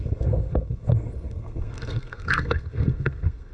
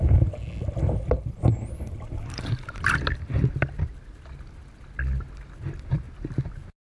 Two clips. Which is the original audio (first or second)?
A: second